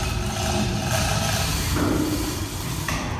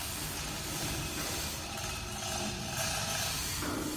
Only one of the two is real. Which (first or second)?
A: second